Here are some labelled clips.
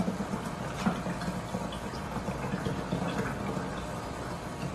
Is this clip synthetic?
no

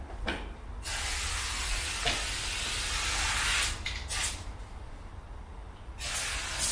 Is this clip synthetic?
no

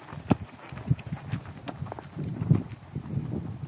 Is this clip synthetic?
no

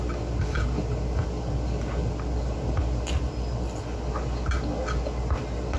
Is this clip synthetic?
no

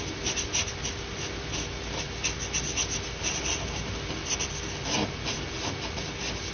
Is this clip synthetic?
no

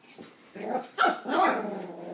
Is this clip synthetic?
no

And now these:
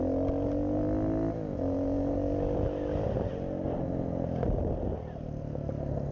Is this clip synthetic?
no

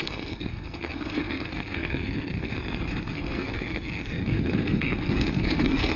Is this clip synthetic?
yes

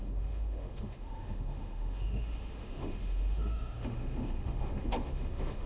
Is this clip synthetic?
yes